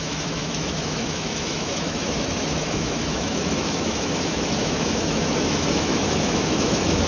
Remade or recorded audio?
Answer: remade